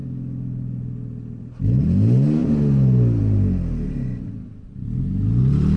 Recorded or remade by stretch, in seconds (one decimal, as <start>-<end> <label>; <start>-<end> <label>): 0.0-5.8 recorded